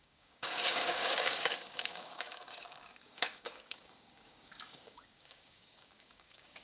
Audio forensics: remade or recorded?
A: remade